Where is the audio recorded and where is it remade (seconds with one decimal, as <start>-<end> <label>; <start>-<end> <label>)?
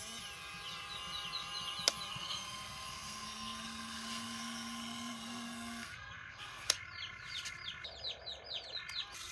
0.0-2.1 recorded; 2.1-6.8 remade; 6.8-9.3 recorded